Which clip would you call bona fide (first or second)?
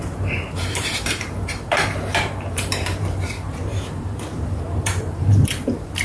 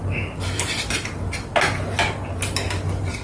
second